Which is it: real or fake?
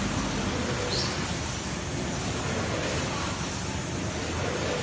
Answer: real